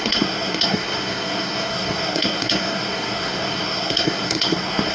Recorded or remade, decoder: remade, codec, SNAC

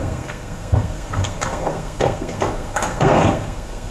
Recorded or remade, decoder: remade, codec, SNAC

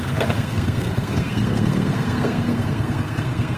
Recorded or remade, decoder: remade, codec, SNAC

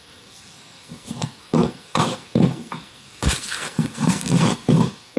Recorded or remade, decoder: remade, codec, SNAC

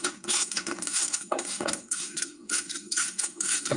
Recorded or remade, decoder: remade, codec, SNAC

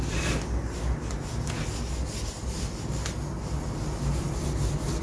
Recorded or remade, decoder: recorded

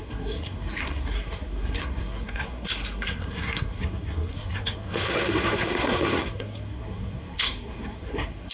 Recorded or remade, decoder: remade, codec, SNAC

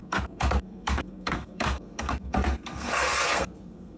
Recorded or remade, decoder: remade, codec, SNAC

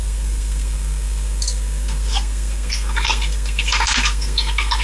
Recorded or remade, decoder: remade, codec, SNAC